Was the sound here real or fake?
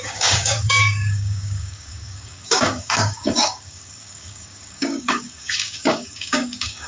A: fake